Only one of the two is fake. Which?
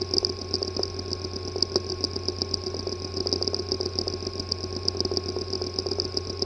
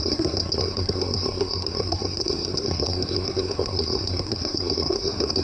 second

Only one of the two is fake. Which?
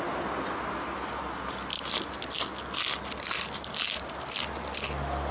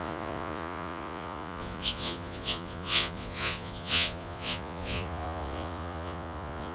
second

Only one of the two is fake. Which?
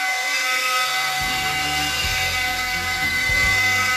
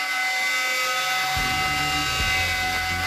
first